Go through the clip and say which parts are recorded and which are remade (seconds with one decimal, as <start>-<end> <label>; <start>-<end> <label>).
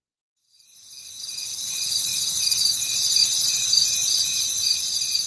0.0-5.3 remade